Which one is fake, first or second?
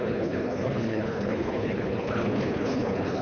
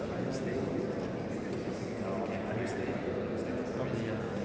first